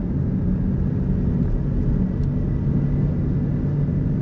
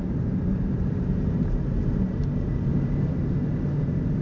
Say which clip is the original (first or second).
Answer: first